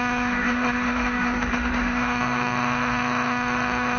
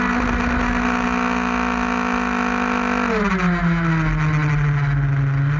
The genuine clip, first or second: second